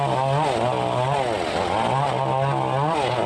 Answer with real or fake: real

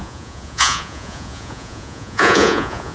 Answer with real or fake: fake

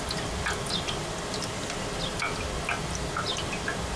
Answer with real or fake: real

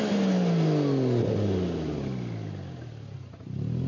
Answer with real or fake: real